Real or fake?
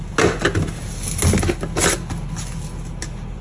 real